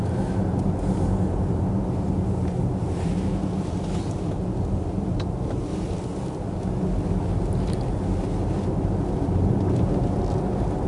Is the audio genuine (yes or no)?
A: yes